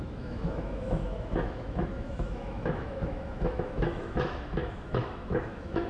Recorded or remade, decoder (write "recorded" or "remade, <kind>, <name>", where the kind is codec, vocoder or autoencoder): remade, autoencoder, DAC-VAE